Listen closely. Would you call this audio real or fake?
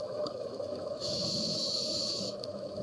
fake